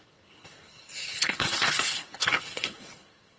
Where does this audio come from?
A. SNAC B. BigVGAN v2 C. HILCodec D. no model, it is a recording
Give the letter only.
C